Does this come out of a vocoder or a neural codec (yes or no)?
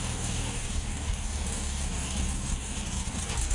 yes